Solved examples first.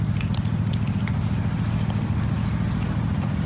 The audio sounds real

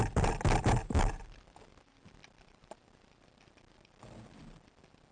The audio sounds fake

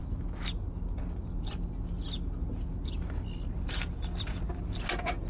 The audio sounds real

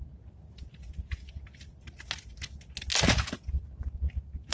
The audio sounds real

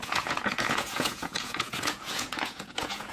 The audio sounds fake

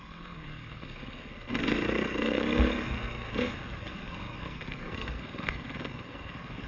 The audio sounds fake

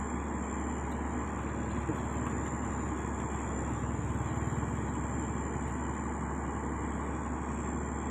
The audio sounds real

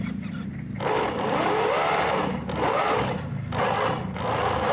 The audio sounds real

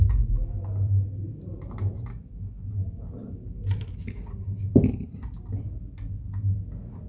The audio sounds real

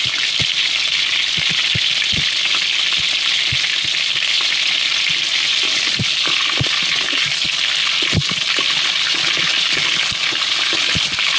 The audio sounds real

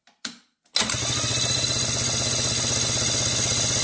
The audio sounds real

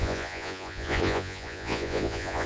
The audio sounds fake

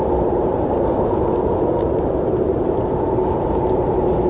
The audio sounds real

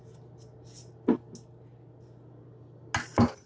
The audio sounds real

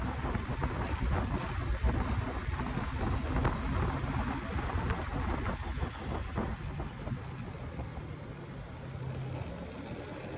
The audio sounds real